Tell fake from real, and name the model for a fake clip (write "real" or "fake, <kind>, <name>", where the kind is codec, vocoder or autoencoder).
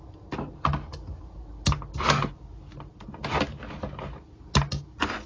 real